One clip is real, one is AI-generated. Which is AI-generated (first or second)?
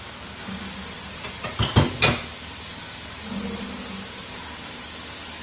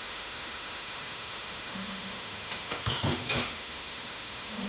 second